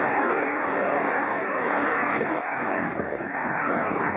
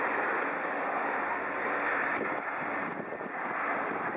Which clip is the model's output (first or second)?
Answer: first